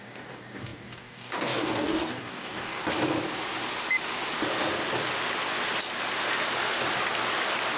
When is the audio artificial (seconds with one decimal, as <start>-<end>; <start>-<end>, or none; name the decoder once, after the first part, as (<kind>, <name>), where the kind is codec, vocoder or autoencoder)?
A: 0.0-2.8 (codec, DAC)